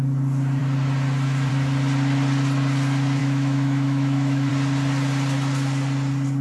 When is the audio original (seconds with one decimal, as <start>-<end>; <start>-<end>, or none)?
0.0-3.2; 4.5-6.4